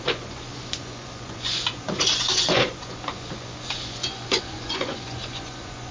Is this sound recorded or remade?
remade